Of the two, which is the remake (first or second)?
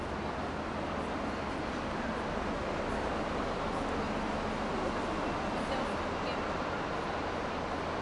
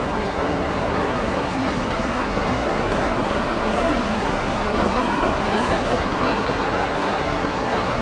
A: second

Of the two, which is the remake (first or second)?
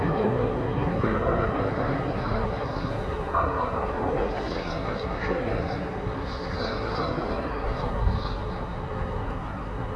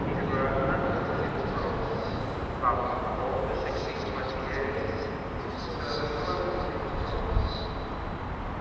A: first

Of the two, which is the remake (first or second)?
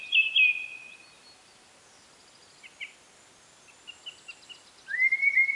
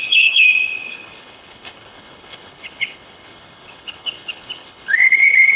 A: second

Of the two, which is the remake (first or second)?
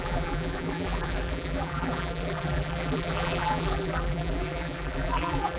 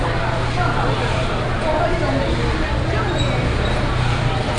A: first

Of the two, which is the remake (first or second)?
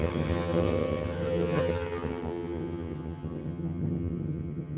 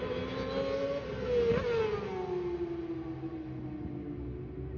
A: first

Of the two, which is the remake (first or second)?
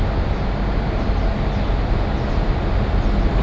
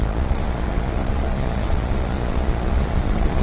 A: second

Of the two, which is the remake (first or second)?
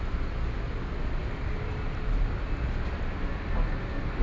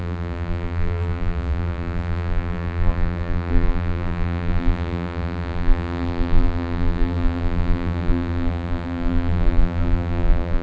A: second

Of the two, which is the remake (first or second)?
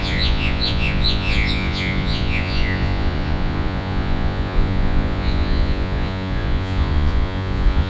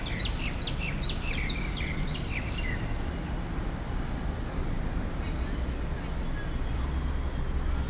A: first